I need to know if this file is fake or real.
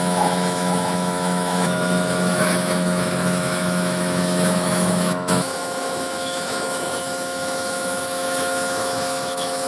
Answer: fake